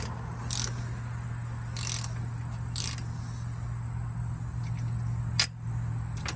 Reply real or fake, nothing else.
real